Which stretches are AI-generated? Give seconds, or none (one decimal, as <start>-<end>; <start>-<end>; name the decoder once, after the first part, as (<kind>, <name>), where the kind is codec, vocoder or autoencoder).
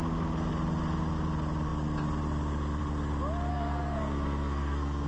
3.5-5.1 (codec, SNAC)